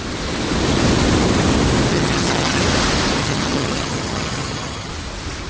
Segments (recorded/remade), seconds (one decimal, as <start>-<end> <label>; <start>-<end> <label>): 0.0-1.9 recorded; 1.9-2.6 remade; 2.6-3.2 recorded; 3.2-4.9 remade; 4.9-5.5 recorded